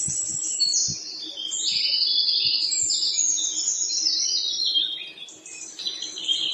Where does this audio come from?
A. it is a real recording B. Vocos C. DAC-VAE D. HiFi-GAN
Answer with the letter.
A